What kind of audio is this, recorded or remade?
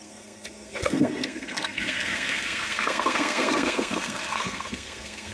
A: remade